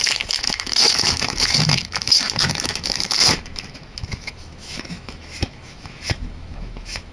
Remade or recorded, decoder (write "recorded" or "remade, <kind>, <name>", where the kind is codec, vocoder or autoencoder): remade, autoencoder, DAC-VAE